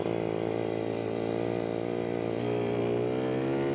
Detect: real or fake real